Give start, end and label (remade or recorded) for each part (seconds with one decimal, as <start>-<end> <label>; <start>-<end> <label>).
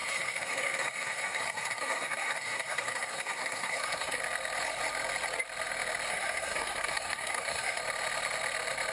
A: 0.0-4.2 remade; 4.2-6.1 recorded; 6.1-7.8 remade; 7.8-8.9 recorded